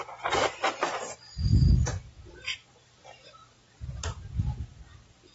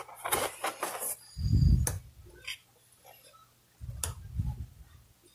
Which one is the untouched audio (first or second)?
second